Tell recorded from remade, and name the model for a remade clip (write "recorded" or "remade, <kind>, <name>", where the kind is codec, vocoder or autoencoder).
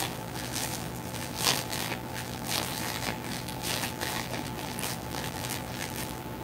remade, vocoder, BigVGAN v2